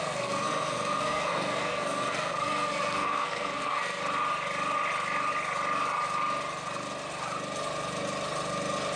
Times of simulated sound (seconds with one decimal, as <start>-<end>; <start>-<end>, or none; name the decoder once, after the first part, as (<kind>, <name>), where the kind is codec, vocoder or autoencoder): 0.0-4.0 (codec, SNAC)